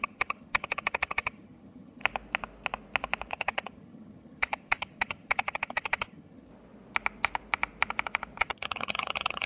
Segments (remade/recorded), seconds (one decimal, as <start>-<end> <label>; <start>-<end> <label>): 0.0-2.0 remade; 2.0-3.3 recorded; 3.3-6.5 remade; 6.5-8.4 recorded; 8.4-9.5 remade